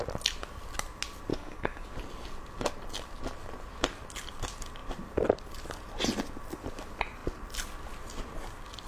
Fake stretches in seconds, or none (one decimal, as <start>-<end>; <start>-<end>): 1.3-1.9